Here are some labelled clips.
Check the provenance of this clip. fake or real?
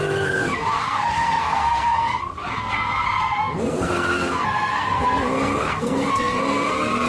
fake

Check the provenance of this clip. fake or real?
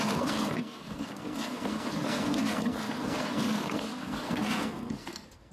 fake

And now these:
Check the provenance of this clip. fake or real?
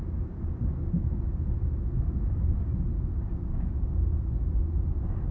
real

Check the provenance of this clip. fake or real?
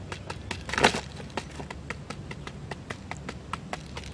real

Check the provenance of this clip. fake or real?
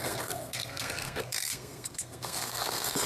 fake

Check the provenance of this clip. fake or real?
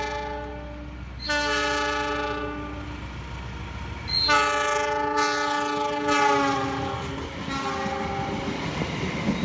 real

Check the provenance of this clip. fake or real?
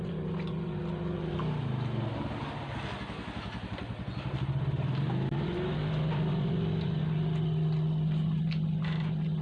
real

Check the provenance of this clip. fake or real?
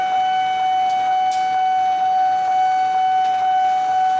real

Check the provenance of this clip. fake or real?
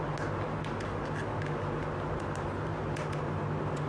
real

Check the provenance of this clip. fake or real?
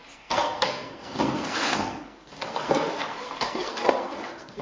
fake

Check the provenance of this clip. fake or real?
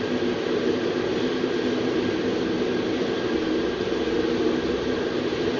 real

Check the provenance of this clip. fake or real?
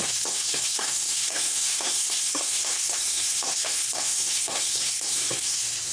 fake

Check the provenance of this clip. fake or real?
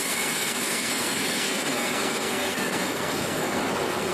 fake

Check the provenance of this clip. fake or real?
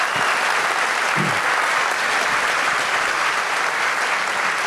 real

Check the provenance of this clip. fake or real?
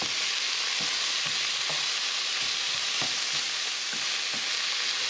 real